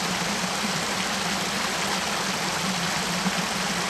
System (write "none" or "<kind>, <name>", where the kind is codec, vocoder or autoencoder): none